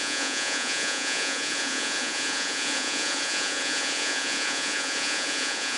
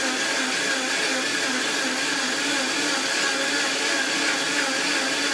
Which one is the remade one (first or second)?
first